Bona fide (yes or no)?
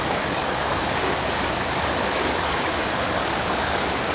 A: no